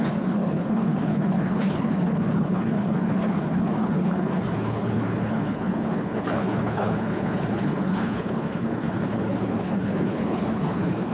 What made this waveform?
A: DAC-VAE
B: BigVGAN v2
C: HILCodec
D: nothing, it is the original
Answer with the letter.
C